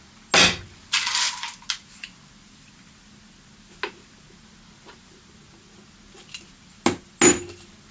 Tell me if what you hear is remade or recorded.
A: recorded